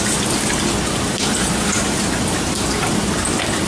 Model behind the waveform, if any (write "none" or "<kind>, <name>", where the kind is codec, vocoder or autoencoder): none